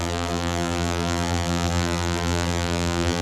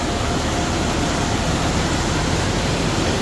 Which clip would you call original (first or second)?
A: second